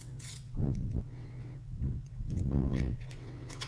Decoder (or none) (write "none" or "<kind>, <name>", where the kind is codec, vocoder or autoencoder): vocoder, WaveNeXt